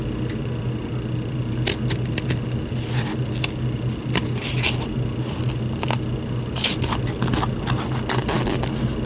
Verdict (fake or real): real